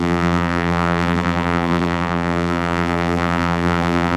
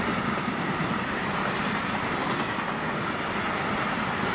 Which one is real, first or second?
second